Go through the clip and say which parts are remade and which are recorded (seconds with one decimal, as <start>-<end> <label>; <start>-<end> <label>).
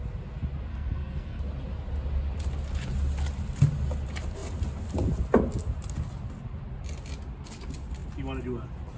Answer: 0.0-0.7 recorded; 0.7-1.4 remade; 1.4-9.0 recorded